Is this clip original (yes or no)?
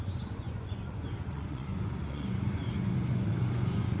no